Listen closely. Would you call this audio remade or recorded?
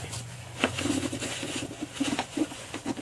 remade